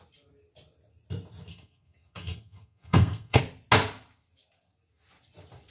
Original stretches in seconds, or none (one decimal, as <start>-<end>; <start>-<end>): 0.0-1.5; 3.4-5.7